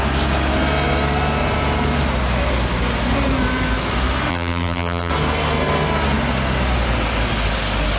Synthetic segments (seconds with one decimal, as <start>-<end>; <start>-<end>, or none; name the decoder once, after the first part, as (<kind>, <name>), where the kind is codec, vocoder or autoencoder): 4.3-5.1 (vocoder, BigVGAN v2)